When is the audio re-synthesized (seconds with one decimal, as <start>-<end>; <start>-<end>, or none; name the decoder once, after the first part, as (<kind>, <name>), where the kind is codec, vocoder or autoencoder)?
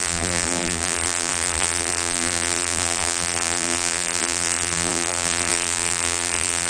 0.0-6.7 (vocoder, BigVGAN v2)